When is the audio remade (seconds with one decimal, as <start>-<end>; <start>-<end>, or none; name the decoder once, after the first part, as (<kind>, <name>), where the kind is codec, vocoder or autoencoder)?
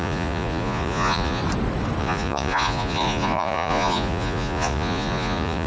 0.0-1.4 (vocoder, Vocos); 2.0-5.7